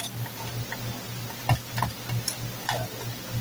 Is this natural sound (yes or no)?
yes